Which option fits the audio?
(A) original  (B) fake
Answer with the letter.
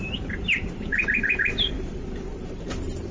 B